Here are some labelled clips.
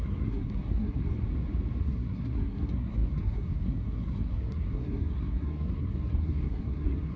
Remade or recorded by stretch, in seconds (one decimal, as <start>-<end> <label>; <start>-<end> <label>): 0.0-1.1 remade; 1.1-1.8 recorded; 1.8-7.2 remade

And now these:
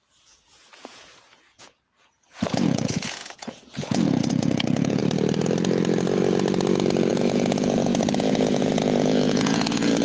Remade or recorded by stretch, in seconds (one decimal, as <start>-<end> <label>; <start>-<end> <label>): 0.0-5.0 remade; 5.0-7.1 recorded; 7.1-10.0 remade

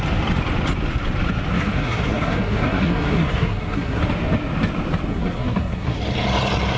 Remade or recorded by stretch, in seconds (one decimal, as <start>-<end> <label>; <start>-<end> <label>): 0.0-1.5 recorded; 1.5-4.0 remade; 4.0-5.1 recorded; 5.1-6.0 remade; 6.0-6.8 recorded

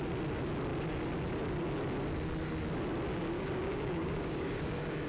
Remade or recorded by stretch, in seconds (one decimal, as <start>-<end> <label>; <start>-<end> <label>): 0.0-3.1 recorded; 3.1-5.1 remade

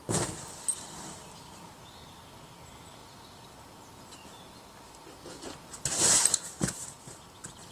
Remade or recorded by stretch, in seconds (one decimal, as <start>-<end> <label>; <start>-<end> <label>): 0.0-7.7 recorded

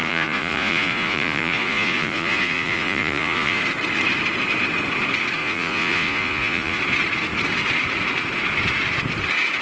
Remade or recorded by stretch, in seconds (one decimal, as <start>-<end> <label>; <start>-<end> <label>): 0.0-3.6 remade; 3.6-5.4 recorded; 5.4-6.8 remade; 6.8-9.6 recorded

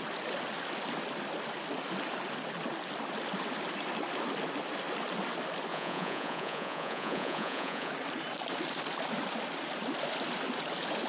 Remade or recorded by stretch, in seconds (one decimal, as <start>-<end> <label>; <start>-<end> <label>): 0.0-5.7 recorded; 5.7-7.9 remade; 7.9-11.1 recorded